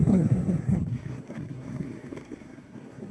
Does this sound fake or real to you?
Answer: fake